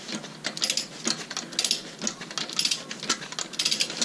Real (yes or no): yes